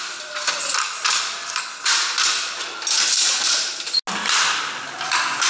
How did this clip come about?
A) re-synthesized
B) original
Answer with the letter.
B